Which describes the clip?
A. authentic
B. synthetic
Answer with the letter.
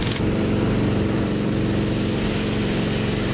A